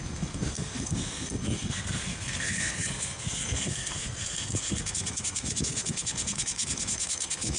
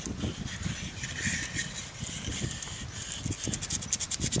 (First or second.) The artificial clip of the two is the first